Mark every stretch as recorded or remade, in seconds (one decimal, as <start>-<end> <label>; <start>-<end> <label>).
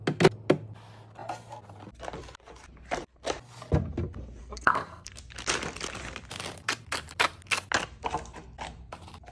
0.0-4.4 recorded; 4.4-5.2 remade; 5.2-9.3 recorded